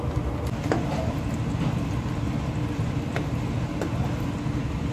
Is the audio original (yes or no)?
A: yes